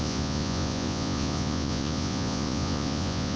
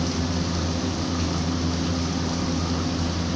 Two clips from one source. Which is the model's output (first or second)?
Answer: first